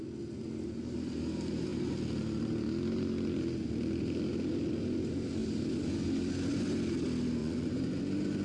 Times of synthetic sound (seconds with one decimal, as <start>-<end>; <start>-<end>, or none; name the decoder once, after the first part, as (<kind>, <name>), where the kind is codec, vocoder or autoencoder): 7.4-8.0 (vocoder, Vocos)